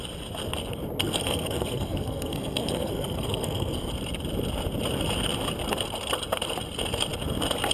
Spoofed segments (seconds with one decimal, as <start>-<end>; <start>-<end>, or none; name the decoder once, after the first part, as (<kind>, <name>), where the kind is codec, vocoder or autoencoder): 1.0-3.9 (codec, SNAC)